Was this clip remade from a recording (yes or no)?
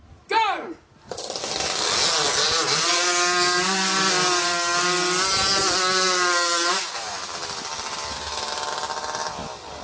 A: no